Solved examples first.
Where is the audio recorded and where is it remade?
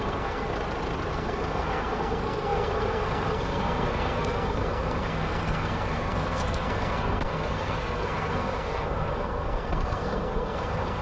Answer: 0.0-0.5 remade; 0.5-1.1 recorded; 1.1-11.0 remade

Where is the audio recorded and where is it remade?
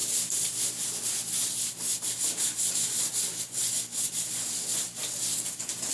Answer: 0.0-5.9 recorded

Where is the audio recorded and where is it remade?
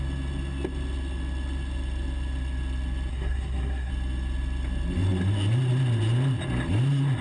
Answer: 0.0-3.1 recorded; 3.1-3.9 remade; 3.9-7.2 recorded